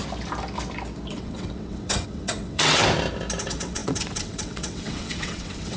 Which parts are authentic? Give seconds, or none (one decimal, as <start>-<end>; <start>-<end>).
0.0-1.1; 2.8-3.4